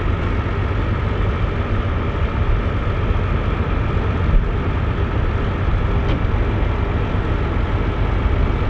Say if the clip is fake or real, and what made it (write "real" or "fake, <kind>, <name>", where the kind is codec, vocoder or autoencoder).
real